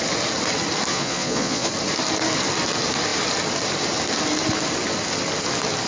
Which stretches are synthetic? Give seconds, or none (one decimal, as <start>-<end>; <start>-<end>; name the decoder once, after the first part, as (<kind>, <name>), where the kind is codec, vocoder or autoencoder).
0.9-1.7 (vocoder, Vocos)

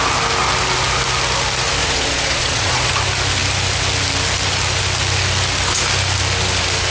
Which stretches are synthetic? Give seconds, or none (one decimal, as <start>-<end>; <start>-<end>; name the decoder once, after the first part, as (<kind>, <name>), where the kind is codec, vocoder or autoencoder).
1.8-2.9 (vocoder, Vocos)

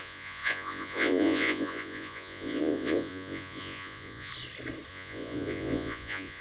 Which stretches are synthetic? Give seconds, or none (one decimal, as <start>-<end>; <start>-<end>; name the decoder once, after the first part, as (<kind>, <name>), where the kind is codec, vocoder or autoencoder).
0.0-4.3 (vocoder, Vocos); 4.9-6.4

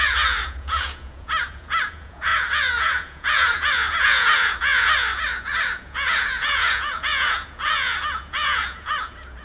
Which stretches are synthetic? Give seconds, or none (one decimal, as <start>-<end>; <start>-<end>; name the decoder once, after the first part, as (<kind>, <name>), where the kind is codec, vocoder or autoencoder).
0.0-9.4 (vocoder, Vocos)